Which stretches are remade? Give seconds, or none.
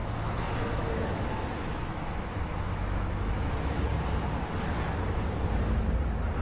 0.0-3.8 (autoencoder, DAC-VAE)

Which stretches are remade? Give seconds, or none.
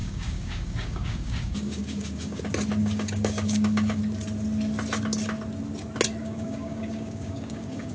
0.0-2.4 (codec, DAC); 2.8-4.0; 6.2-7.9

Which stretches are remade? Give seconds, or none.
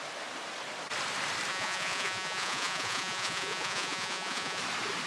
1.5-4.6 (vocoder, Vocos)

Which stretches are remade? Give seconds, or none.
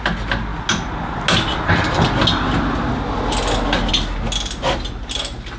none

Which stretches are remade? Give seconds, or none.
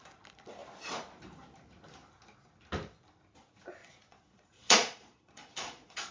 3.8-6.1 (vocoder, Vocos)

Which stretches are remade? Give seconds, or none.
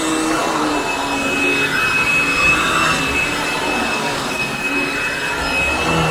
3.8-4.6 (codec, DAC)